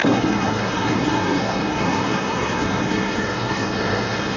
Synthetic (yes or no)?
yes